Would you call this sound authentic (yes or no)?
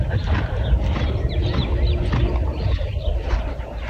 yes